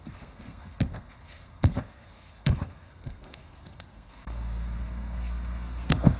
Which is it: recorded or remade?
remade